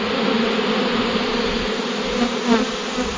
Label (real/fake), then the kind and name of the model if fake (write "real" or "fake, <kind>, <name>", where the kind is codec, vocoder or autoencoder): real